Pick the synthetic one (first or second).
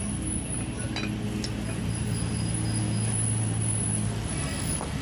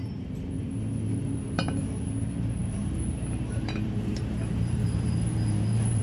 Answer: second